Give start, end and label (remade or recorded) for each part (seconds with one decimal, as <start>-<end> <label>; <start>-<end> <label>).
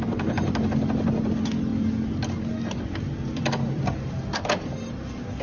0.0-5.4 recorded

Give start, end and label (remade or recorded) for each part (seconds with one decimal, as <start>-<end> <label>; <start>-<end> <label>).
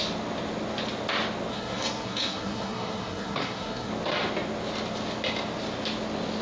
0.0-1.5 recorded; 1.5-3.9 remade; 3.9-6.4 recorded